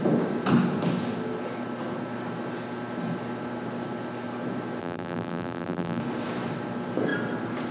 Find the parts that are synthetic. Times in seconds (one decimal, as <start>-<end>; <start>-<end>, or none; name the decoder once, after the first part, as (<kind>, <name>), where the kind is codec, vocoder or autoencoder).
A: 4.8-6.0 (vocoder, BigVGAN v2)

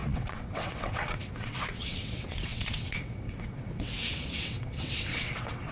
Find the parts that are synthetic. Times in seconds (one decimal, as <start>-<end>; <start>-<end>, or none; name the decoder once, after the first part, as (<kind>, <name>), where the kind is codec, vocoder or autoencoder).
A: 0.0-5.7 (vocoder, WaveNeXt)

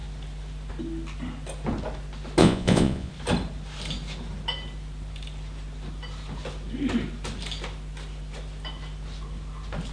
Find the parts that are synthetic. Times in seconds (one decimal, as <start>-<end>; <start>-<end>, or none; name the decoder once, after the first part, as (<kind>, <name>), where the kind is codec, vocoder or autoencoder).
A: 2.4-3.1 (vocoder, Vocos)

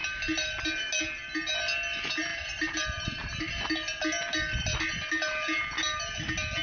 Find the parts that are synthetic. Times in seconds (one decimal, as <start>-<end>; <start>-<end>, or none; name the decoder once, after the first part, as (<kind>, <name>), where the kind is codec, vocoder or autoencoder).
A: 2.3-3.5 (vocoder, BigVGAN v2)

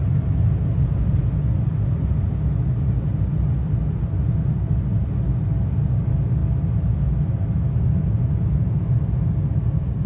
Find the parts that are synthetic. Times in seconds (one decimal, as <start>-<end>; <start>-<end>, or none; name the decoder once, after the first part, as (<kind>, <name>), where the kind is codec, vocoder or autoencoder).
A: none

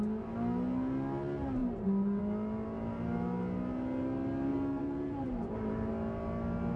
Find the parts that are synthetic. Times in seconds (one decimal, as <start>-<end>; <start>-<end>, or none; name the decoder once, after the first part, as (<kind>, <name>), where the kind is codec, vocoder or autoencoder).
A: 1.6-2.2 (vocoder, BigVGAN v2); 4.5-5.9

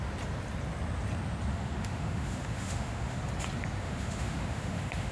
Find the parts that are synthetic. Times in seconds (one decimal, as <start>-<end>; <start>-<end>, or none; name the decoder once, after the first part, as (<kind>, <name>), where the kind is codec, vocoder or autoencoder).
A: 1.5-3.2 (autoencoder, DAC-VAE); 3.8-5.1

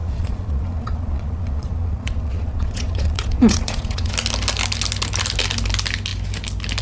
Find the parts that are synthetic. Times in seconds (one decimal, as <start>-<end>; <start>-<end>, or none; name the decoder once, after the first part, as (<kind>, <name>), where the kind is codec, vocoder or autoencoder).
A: 0.0-4.1 (vocoder, Vocos)